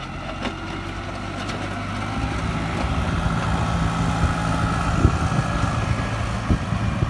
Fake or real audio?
real